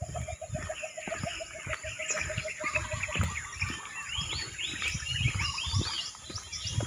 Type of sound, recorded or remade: recorded